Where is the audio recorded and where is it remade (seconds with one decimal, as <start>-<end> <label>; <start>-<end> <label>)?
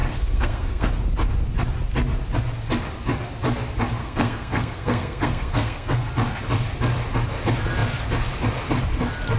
0.0-0.9 remade; 0.9-4.0 recorded; 4.0-6.1 remade; 6.1-9.4 recorded